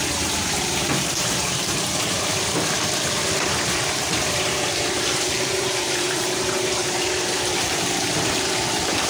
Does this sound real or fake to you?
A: fake